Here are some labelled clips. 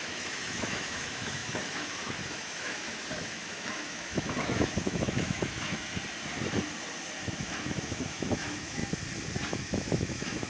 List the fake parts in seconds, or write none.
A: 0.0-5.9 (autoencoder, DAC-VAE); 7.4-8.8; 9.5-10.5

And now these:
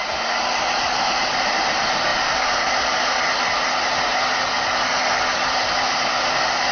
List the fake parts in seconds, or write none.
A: none

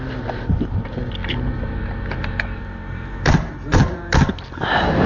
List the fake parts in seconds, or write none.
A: 1.2-4.3 (vocoder, BigVGAN v2)

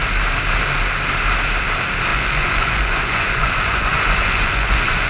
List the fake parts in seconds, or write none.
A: 2.1-5.1 (vocoder, Vocos)

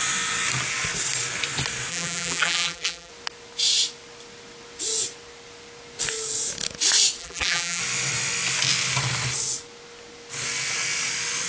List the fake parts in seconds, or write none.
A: 1.9-3.1 (vocoder, BigVGAN v2); 7.2-7.8